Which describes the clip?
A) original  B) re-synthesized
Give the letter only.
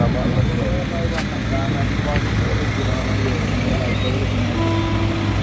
A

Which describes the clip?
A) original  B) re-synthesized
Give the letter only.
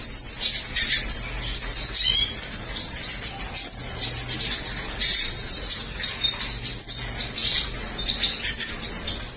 A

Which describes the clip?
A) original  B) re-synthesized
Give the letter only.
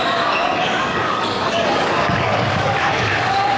B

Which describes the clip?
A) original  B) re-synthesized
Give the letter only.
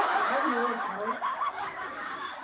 B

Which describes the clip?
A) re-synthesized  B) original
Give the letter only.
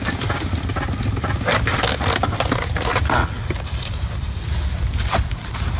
B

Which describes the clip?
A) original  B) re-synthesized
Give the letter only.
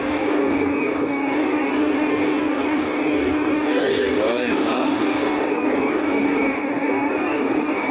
B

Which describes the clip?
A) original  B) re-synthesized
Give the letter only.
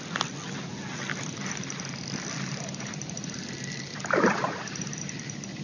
A